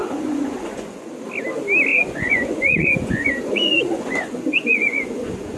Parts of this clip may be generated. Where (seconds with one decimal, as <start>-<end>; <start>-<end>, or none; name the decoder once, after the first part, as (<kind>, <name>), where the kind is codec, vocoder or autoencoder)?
0.0-1.1 (vocoder, Vocos); 1.9-5.6